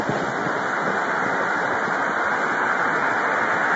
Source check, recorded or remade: recorded